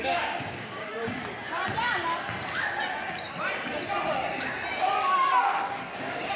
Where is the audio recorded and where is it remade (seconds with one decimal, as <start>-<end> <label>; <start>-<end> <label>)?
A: 0.0-1.0 remade; 1.0-4.8 recorded; 4.8-6.4 remade